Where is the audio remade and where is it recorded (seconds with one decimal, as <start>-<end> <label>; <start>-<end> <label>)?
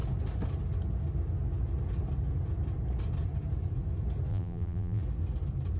0.0-4.3 recorded; 4.3-5.0 remade; 5.0-5.8 recorded